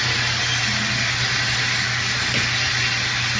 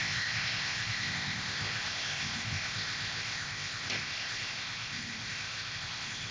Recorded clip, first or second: first